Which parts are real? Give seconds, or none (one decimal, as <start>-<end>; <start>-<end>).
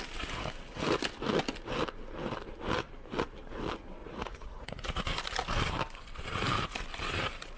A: 0.0-4.0; 5.0-7.6